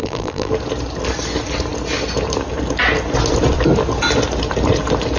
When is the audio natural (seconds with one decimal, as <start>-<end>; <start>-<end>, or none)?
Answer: 0.5-5.2